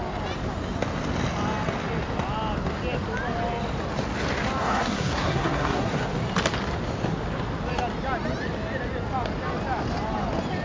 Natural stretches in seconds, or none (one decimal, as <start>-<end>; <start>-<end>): 0.0-4.6; 6.0-10.6

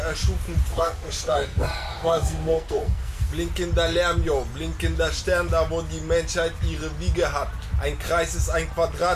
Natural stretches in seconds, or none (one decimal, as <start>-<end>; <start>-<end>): 0.0-0.7; 3.3-9.1

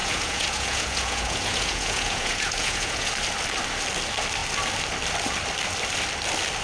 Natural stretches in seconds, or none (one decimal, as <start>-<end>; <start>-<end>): 3.1-6.6

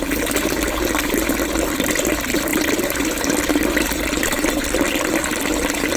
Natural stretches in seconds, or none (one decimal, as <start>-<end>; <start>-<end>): 0.0-6.0

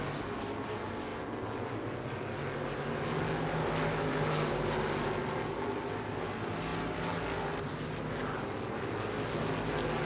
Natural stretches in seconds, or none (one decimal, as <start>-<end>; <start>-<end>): 0.0-10.1

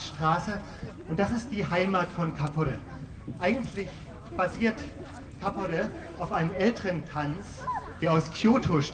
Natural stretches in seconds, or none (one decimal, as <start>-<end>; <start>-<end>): 0.0-1.8; 4.8-5.8; 6.7-7.3

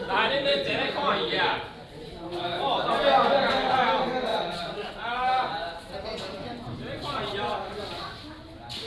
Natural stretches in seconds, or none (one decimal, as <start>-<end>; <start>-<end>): 0.0-0.5; 1.1-4.3; 4.9-8.9